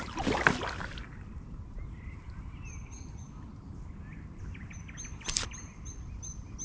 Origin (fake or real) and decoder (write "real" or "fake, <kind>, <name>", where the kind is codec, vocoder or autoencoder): real